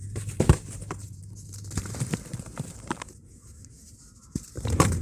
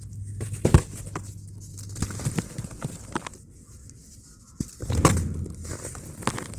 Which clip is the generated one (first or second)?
first